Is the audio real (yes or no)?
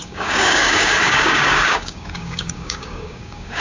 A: no